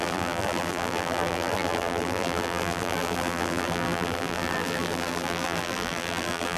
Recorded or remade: remade